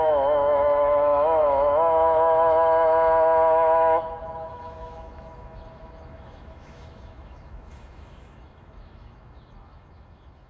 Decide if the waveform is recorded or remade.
remade